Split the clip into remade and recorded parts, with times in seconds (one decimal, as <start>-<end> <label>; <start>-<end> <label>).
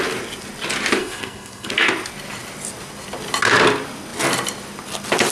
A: 0.0-1.0 recorded; 1.0-1.7 remade; 1.7-5.3 recorded